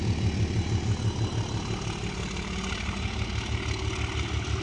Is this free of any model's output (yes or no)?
yes